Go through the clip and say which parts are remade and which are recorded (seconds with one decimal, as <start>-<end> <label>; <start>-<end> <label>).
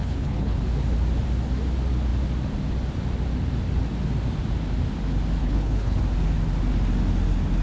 0.0-0.6 remade; 0.6-5.4 recorded; 5.4-6.0 remade; 6.0-7.6 recorded